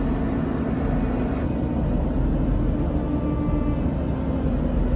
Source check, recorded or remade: recorded